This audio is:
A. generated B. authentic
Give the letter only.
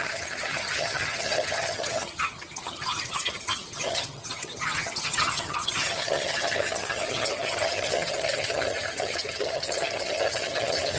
A